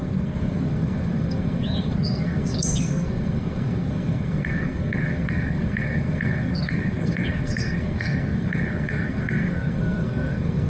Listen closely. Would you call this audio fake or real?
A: fake